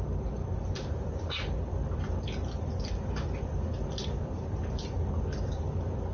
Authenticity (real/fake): real